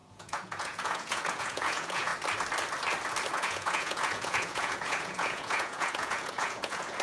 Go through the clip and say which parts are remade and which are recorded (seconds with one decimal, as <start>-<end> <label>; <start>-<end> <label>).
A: 0.0-2.1 remade; 2.1-3.3 recorded; 3.3-7.0 remade